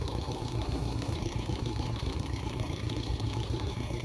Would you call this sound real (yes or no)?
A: no